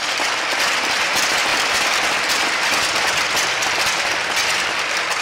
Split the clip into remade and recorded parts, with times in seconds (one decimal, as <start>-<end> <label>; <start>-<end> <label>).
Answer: 0.0-5.2 recorded